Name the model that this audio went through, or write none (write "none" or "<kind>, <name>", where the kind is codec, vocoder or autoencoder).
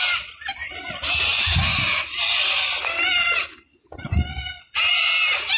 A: none